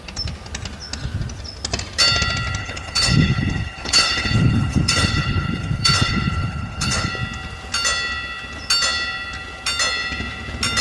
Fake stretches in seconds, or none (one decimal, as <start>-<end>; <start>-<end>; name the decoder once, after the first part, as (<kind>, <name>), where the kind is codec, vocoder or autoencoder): 2.6-7.1 (codec, HILCodec)